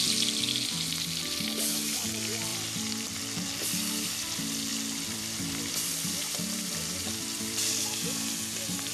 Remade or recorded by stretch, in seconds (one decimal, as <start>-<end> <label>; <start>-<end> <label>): 0.0-2.5 recorded; 2.5-3.2 remade; 3.2-4.7 recorded; 4.7-8.3 remade; 8.3-8.9 recorded